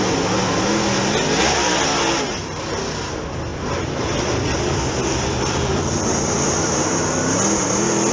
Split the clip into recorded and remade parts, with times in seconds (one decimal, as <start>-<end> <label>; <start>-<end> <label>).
0.0-3.5 recorded; 3.5-6.7 remade; 6.7-8.1 recorded